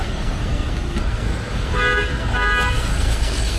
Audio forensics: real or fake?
fake